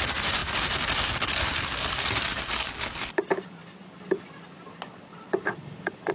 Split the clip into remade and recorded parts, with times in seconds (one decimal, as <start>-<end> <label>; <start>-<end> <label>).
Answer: 0.0-4.7 recorded; 4.7-6.1 remade